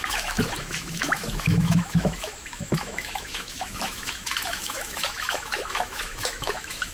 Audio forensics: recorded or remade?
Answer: remade